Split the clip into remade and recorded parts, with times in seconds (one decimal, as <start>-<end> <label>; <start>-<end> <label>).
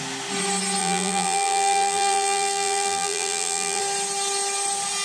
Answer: 0.0-0.8 recorded; 0.8-3.8 remade; 3.8-5.0 recorded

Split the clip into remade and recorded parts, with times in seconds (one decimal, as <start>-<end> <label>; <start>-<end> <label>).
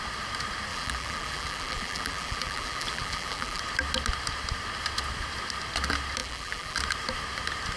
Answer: 0.0-0.7 recorded; 0.7-3.6 remade; 3.6-6.2 recorded; 6.2-6.8 remade; 6.8-7.8 recorded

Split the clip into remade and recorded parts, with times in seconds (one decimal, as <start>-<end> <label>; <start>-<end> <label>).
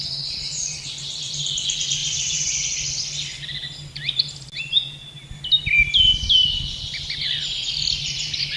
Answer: 0.0-2.0 recorded; 2.0-2.6 remade; 2.6-8.6 recorded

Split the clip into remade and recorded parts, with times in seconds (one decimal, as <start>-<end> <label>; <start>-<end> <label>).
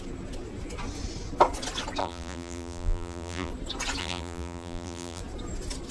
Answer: 0.0-2.0 recorded; 2.0-3.5 remade; 3.5-4.0 recorded; 4.0-5.2 remade; 5.2-5.9 recorded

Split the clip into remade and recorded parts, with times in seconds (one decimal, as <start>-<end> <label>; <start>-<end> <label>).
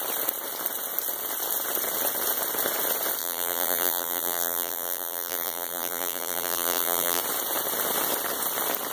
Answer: 0.0-3.2 recorded; 3.2-7.2 remade; 7.2-8.9 recorded